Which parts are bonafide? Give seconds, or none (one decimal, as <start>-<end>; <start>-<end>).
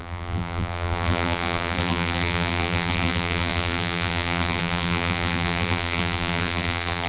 none